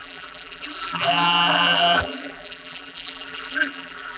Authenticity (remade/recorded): remade